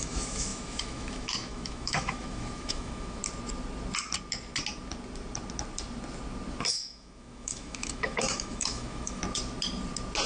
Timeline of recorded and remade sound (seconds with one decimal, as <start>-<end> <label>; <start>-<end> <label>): 0.0-3.2 remade; 3.2-6.7 recorded; 6.7-9.2 remade; 9.2-10.3 recorded